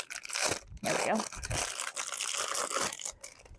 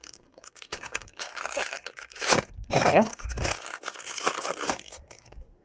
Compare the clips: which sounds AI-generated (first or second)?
second